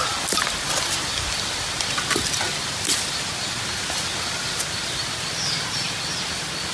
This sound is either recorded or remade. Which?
recorded